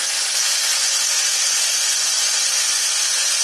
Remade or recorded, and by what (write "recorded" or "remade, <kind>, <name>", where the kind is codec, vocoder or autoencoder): remade, vocoder, Vocos